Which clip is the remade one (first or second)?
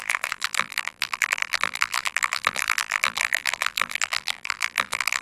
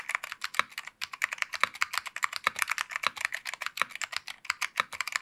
first